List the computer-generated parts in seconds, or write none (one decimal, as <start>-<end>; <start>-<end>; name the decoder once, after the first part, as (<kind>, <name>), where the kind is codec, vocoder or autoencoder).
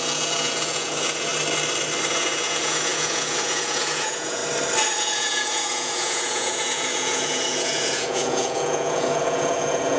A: 0.0-1.3 (vocoder, Vocos); 2.1-4.4; 5.0-10.0